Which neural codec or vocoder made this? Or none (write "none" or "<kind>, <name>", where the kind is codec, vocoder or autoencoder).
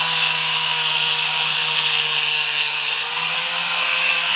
codec, SNAC